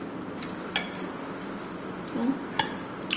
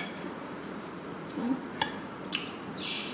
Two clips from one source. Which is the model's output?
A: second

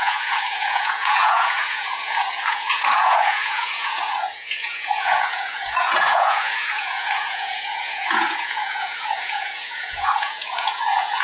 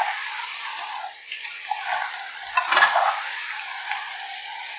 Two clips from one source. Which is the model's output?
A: first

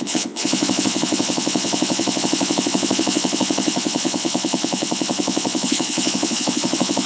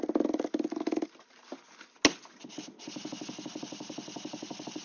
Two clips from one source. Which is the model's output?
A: first